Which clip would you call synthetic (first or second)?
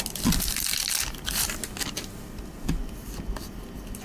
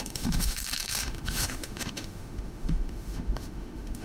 second